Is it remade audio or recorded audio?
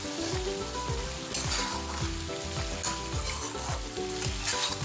recorded